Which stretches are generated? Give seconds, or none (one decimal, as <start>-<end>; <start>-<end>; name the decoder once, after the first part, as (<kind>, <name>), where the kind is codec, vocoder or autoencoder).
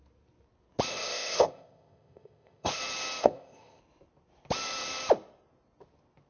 0.9-2.8 (codec, ZipCodec); 3.2-3.8